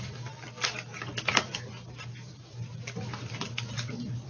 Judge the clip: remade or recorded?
remade